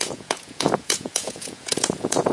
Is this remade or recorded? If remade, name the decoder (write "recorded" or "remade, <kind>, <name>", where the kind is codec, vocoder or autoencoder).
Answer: remade, vocoder, Vocos